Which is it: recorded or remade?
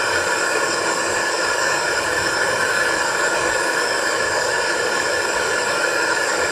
remade